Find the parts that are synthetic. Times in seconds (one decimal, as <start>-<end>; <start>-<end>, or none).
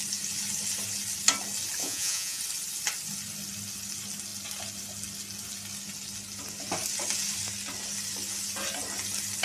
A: 1.8-2.4